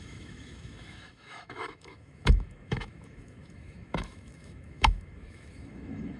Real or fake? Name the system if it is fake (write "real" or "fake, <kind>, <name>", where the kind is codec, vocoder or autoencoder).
fake, autoencoder, DAC-VAE